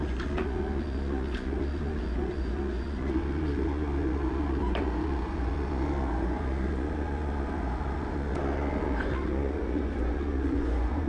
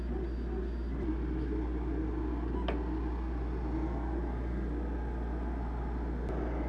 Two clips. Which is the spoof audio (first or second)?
first